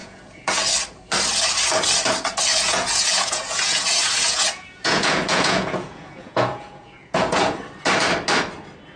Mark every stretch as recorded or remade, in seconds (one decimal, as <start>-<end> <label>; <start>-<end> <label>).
0.0-0.7 remade; 0.7-2.5 recorded; 2.5-7.4 remade; 7.4-9.0 recorded